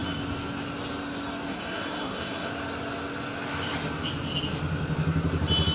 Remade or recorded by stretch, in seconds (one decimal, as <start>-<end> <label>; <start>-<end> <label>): 0.0-1.5 recorded; 1.5-2.5 remade; 2.5-5.7 recorded